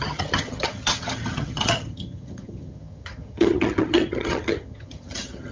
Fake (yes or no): yes